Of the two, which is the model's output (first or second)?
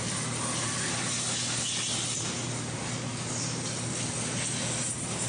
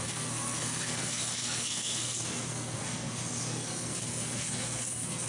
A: second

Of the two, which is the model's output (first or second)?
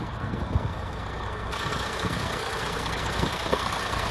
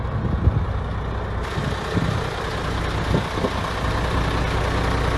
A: first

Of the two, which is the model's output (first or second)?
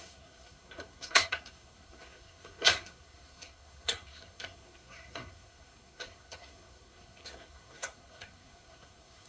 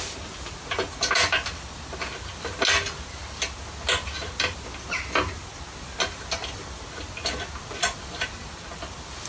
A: first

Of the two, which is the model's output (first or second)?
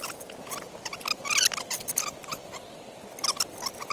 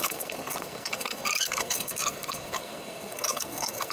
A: second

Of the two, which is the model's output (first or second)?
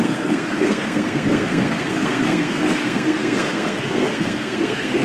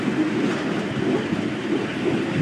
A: first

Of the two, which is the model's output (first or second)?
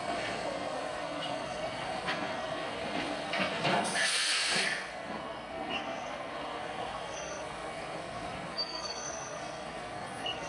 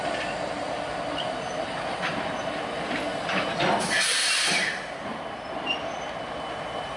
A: first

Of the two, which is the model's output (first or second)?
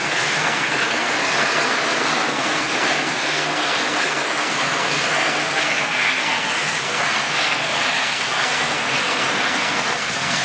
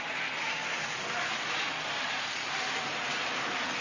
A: first